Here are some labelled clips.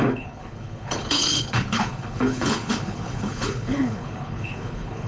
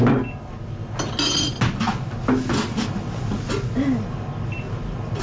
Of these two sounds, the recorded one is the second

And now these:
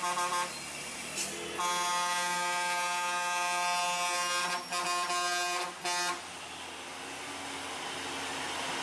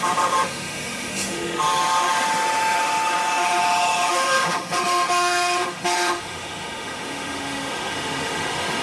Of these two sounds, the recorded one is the first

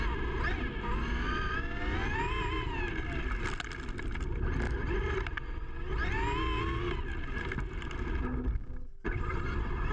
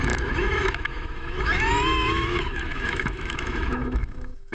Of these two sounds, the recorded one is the first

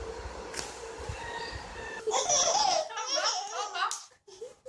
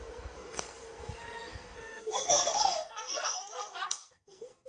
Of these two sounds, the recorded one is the first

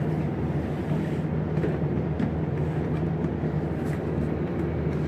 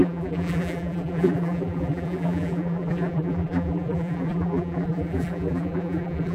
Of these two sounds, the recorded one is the first